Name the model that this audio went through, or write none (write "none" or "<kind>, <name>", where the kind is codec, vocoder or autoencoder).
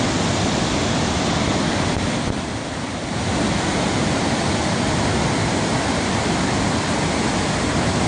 none